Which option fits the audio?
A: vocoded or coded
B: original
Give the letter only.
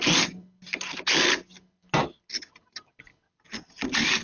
B